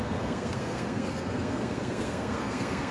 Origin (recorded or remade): remade